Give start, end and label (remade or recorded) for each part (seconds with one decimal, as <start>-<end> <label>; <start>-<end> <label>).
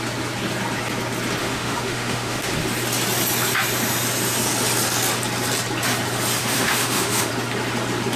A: 0.0-1.4 recorded; 1.4-2.5 remade; 2.5-6.4 recorded; 6.4-7.3 remade; 7.3-8.2 recorded